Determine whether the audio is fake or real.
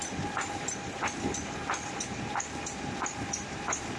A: real